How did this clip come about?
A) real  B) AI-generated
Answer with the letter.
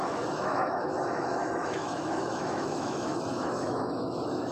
B